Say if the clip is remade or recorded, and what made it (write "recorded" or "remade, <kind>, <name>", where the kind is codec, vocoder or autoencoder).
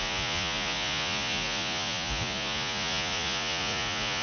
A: remade, vocoder, Vocos